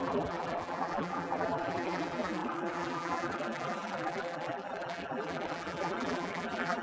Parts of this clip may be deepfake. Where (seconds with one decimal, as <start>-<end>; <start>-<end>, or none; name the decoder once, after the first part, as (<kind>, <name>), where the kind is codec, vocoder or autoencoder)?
0.0-6.8 (vocoder, BigVGAN v2)